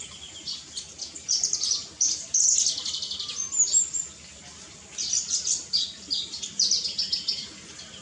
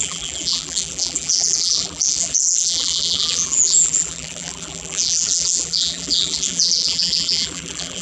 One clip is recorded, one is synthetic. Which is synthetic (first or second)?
second